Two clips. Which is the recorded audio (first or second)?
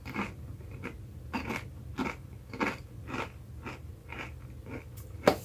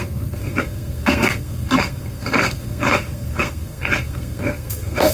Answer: first